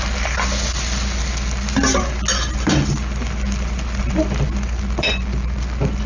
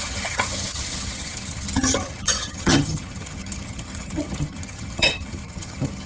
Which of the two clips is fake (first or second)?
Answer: second